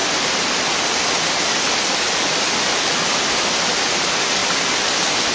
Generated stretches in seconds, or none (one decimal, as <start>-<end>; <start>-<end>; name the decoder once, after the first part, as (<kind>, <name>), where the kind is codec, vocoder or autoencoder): none